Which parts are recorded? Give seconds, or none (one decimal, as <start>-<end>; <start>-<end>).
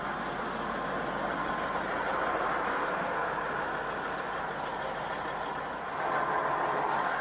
0.0-2.7; 3.3-7.2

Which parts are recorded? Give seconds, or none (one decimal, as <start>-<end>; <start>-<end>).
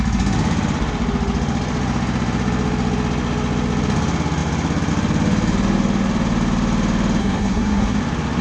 0.0-7.2; 8.0-8.4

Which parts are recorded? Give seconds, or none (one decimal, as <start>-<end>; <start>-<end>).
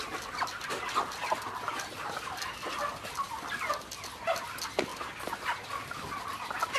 0.0-6.8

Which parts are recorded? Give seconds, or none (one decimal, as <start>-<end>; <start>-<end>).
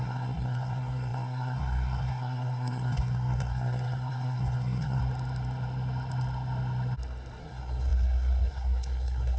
5.0-7.4